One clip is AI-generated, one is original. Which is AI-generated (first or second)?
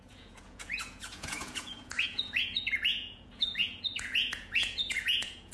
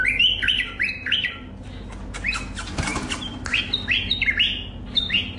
first